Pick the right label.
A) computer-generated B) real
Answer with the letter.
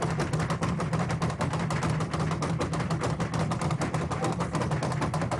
B